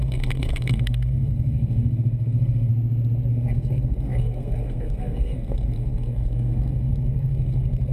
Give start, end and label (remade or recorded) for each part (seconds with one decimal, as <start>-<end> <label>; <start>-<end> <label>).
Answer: 0.0-2.7 remade; 2.7-3.3 recorded; 3.3-7.9 remade